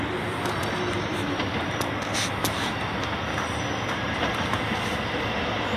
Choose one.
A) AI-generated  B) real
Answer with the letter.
B